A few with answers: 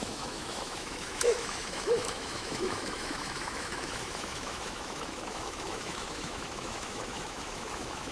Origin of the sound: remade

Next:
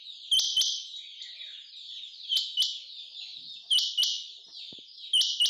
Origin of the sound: recorded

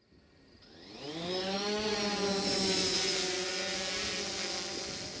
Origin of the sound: recorded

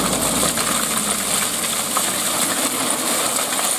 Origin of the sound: recorded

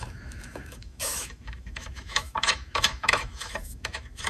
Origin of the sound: remade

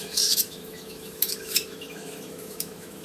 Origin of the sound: remade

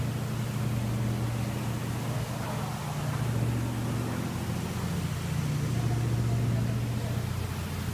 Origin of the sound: recorded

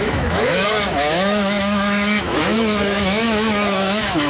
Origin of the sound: remade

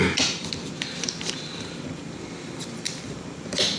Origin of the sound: recorded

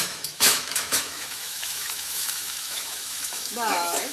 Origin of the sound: remade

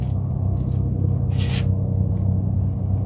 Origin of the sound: recorded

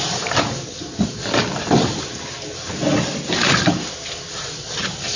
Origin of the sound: recorded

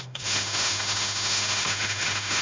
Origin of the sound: remade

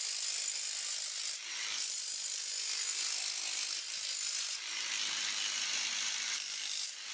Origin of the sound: recorded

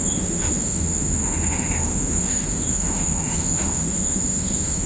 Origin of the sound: remade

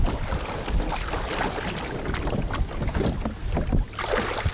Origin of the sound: recorded